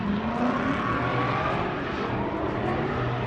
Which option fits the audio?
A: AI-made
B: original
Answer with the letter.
B